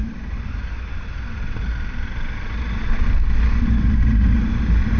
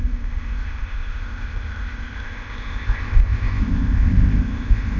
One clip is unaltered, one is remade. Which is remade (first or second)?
second